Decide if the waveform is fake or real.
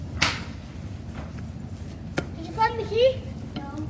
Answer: real